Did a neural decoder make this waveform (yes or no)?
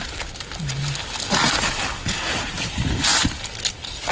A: no